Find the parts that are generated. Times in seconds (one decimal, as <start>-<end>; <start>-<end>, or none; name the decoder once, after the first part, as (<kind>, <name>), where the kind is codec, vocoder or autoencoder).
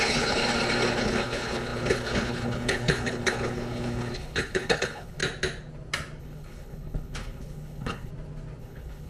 0.0-0.4 (codec, HILCodec); 1.0-5.2; 6.2-8.1; 8.6-9.1